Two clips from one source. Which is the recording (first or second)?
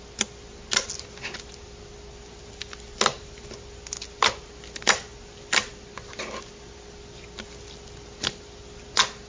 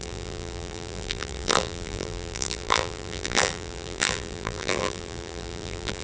first